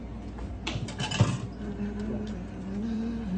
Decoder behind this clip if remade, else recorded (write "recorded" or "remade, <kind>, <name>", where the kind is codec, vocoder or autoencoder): recorded